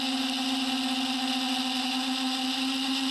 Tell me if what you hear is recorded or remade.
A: recorded